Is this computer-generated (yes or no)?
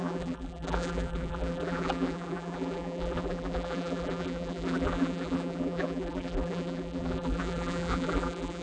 yes